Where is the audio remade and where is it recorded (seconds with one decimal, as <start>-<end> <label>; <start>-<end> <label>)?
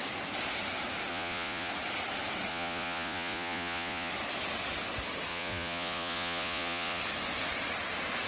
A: 0.0-1.1 recorded; 1.1-1.7 remade; 1.7-2.5 recorded; 2.5-4.1 remade; 4.1-5.3 recorded; 5.3-7.0 remade; 7.0-8.3 recorded